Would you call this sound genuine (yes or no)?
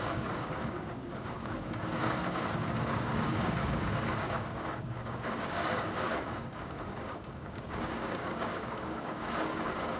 no